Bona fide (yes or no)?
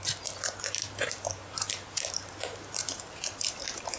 no